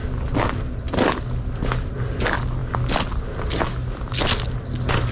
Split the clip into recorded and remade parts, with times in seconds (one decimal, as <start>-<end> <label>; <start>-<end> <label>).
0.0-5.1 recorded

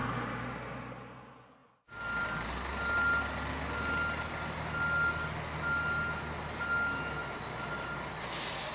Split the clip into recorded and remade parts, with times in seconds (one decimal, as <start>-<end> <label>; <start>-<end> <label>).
0.0-8.7 recorded

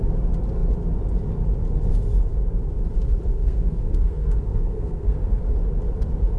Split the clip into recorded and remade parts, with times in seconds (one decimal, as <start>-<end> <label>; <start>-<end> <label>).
0.0-3.3 recorded; 3.3-5.4 remade; 5.4-6.4 recorded